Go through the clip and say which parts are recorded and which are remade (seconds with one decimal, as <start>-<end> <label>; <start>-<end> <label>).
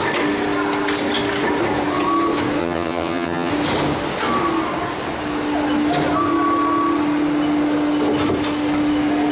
0.0-2.6 recorded; 2.6-3.5 remade; 3.5-9.3 recorded